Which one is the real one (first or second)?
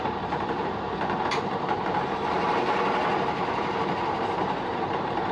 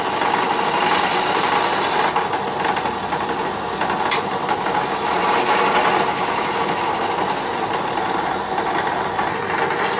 second